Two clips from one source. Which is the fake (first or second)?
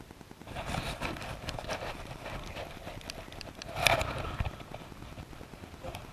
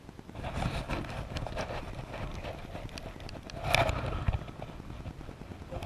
first